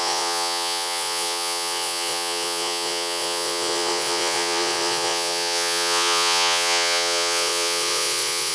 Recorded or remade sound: remade